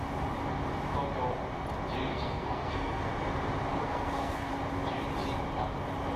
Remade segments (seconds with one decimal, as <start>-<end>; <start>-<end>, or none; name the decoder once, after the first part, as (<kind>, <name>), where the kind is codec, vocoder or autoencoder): 2.1-3.1 (codec, SNAC); 3.7-4.5